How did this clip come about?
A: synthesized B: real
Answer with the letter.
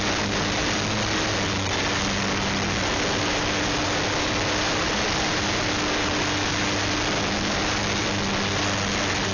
B